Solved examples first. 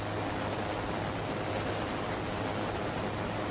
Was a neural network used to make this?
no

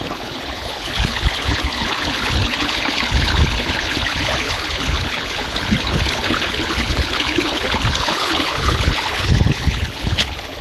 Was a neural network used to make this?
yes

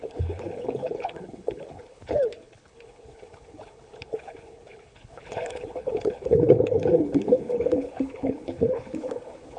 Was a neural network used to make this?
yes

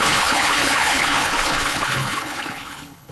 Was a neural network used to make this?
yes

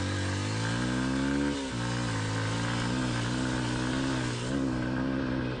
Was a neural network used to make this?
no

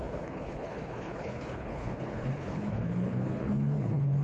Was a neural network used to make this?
yes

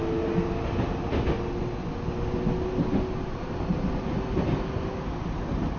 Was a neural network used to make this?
no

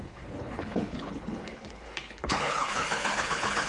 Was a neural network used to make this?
yes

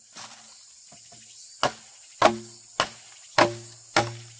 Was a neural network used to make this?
no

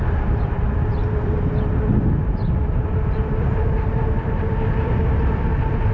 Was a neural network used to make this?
no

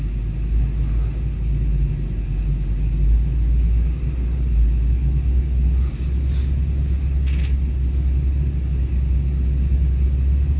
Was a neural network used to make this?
no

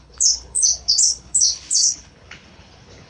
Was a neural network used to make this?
yes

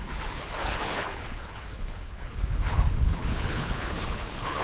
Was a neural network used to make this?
yes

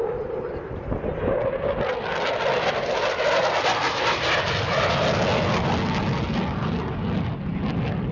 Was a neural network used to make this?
no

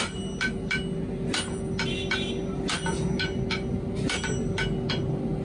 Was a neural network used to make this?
no